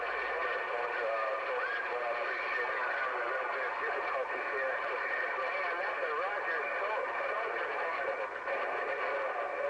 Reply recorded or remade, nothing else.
recorded